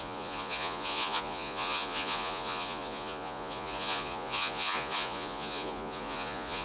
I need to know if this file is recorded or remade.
remade